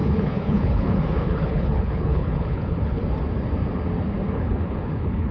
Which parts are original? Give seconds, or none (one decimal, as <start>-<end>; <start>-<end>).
3.0-4.3